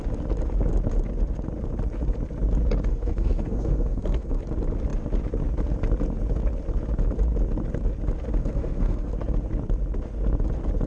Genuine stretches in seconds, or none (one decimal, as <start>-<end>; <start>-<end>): 0.0-2.9; 4.4-8.4; 9.1-10.9